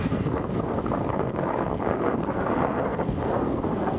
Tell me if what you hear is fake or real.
fake